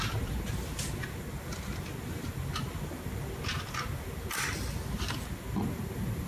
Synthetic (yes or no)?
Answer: no